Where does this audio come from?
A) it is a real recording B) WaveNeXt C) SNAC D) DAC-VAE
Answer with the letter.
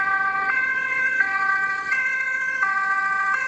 B